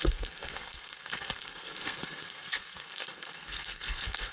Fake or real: fake